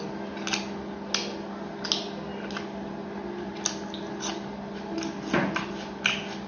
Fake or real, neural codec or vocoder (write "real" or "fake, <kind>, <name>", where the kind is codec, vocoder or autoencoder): real